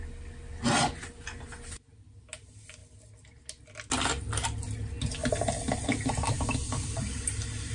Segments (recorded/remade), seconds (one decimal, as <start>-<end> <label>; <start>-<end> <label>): 0.0-7.7 recorded